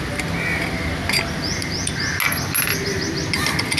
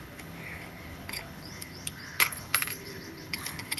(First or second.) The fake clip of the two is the second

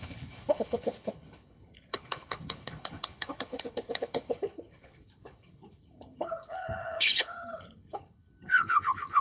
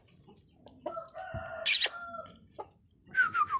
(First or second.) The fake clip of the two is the first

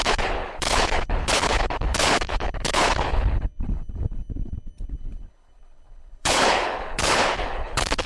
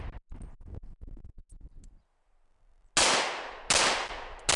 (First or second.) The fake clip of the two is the first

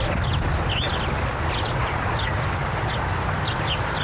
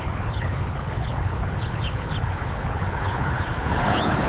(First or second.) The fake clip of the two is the second